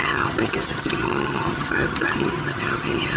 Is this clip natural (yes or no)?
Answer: no